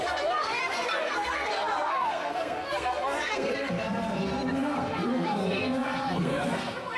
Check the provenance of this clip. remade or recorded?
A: remade